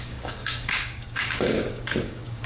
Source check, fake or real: fake